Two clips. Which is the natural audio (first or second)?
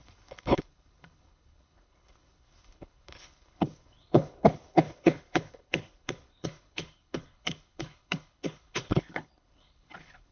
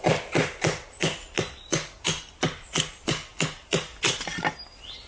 second